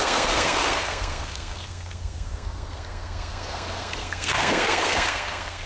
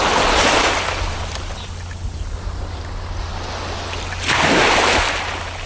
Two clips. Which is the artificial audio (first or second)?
first